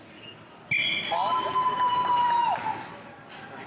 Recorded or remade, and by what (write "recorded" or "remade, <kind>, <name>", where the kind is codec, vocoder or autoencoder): recorded